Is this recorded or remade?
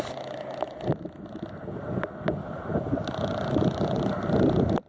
recorded